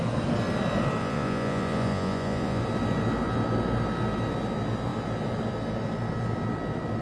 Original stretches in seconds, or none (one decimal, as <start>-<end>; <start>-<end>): 0.0-1.0; 2.6-7.0

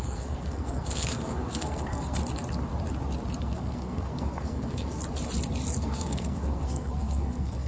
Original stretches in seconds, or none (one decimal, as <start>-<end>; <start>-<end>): 2.2-3.4; 5.0-5.8

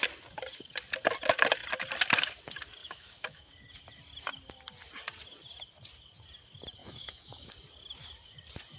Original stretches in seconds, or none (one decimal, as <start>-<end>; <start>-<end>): 0.0-2.8; 3.5-6.8; 7.5-8.8

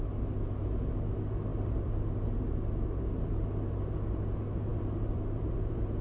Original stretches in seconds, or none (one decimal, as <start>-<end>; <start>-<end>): 0.0-1.5; 2.0-4.7

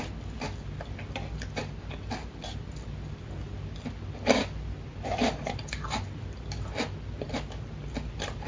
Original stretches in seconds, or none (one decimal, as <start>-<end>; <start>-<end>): 0.0-8.5

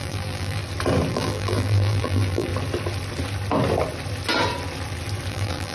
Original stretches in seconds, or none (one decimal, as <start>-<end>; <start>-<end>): 0.6-1.1; 2.5-5.3

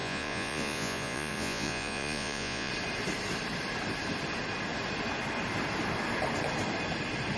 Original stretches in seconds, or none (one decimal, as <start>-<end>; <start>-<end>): 2.7-7.4